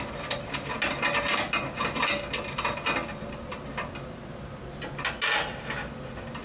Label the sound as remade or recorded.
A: recorded